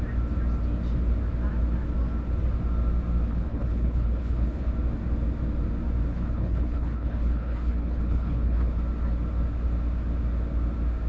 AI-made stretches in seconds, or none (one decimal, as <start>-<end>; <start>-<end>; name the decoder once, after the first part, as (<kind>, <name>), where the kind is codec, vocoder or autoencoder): 3.3-4.7 (codec, HILCodec); 6.1-8.8